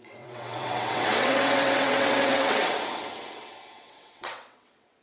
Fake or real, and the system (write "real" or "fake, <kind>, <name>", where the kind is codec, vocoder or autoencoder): fake, vocoder, WaveNeXt